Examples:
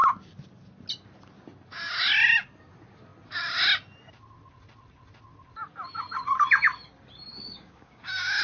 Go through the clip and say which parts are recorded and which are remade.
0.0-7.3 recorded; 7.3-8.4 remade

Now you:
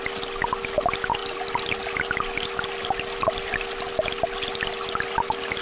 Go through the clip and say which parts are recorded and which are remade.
0.0-5.6 recorded

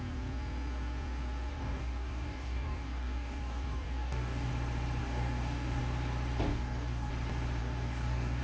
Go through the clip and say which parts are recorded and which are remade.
0.0-1.5 recorded; 1.5-4.5 remade; 4.5-5.0 recorded; 5.0-5.8 remade; 5.8-6.5 recorded; 6.5-7.1 remade; 7.1-7.6 recorded; 7.6-8.4 remade